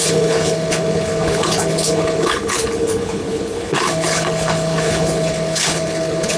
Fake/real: fake